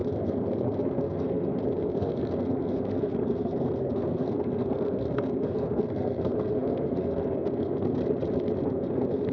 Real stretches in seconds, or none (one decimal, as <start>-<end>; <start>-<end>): 8.0-8.7